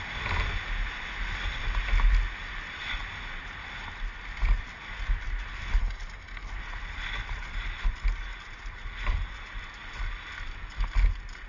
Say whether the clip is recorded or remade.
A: recorded